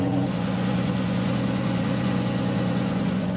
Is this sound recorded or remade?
remade